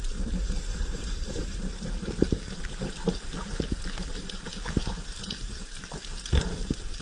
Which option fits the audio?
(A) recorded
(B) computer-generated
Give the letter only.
B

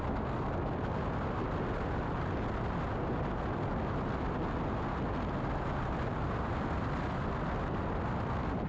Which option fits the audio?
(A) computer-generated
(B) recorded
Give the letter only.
B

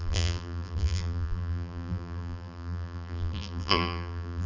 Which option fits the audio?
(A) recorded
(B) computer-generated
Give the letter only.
B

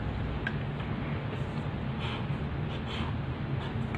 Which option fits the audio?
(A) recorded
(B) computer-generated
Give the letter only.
A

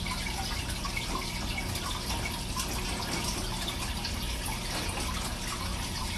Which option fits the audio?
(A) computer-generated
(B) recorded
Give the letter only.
B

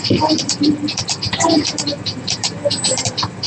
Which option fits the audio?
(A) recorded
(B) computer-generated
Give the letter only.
B